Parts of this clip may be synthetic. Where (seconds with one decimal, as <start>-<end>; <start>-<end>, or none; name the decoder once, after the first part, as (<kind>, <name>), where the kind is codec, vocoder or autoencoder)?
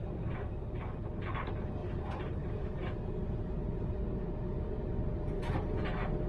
0.0-0.9 (vocoder, BigVGAN v2); 1.8-4.0